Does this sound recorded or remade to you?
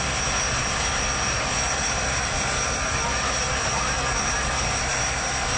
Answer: recorded